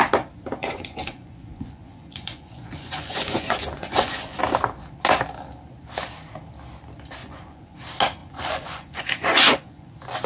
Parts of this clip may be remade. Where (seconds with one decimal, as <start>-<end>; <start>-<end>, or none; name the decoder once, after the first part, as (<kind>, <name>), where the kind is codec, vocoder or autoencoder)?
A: 0.6-4.4 (vocoder, Vocos); 7.2-7.8; 8.2-9.9